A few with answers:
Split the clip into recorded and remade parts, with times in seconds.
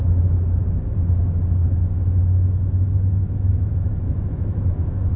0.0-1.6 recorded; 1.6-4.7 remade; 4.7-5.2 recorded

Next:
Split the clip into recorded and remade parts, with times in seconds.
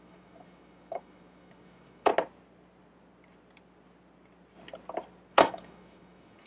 0.0-2.1 remade; 2.1-5.3 recorded; 5.3-6.5 remade